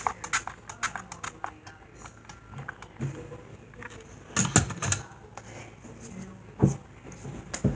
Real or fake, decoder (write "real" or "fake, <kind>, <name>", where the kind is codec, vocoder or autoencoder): real